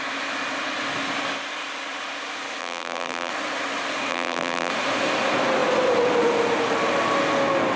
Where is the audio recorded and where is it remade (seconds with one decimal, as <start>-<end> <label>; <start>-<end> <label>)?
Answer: 0.0-2.6 recorded; 2.6-3.3 remade; 3.3-4.1 recorded; 4.1-4.7 remade; 4.7-7.8 recorded